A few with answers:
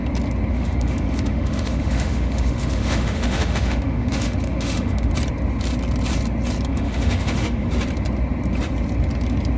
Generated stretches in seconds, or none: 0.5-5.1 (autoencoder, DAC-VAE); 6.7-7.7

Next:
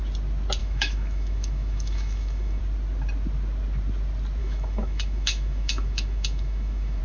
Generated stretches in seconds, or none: 0.6-2.6 (autoencoder, DAC-VAE); 4.4-7.0

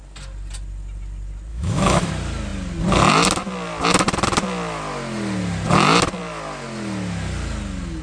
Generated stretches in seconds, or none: 1.5-2.1 (autoencoder, DAC-VAE)

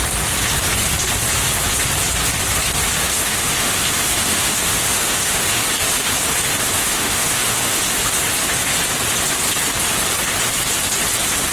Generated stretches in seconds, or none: 3.0-5.6 (autoencoder, DAC-VAE); 6.8-7.8

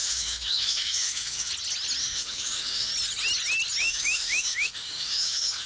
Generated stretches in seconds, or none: 0.0-1.5 (autoencoder, DAC-VAE); 2.0-2.9; 3.8-5.7

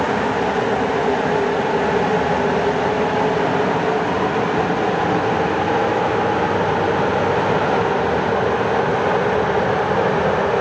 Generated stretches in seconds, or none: 5.8-6.3 (autoencoder, DAC-VAE)